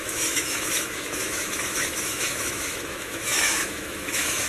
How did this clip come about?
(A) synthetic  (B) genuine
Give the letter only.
A